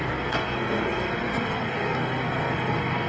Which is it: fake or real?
fake